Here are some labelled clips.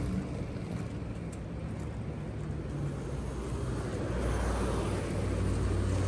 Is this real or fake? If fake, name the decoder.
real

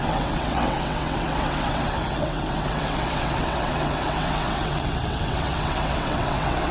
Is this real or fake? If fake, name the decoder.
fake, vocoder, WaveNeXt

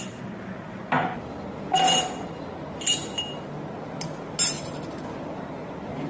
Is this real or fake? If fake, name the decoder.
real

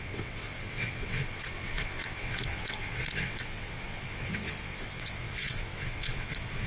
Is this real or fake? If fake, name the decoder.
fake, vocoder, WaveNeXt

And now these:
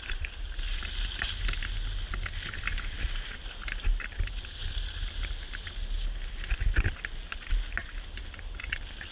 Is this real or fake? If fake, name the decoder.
real